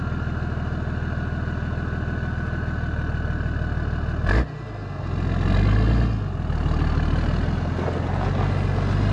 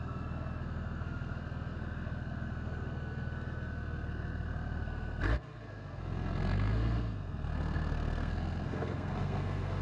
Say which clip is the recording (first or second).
first